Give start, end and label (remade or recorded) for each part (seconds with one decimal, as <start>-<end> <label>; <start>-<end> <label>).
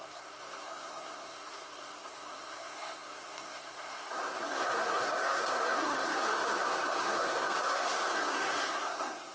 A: 0.0-9.3 remade